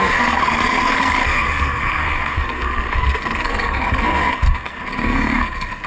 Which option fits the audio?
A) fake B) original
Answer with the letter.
A